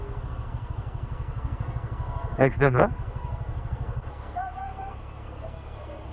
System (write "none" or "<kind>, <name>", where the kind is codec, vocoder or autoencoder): codec, SNAC